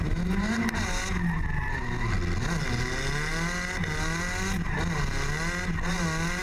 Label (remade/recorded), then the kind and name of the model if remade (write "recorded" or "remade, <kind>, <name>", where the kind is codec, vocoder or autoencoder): recorded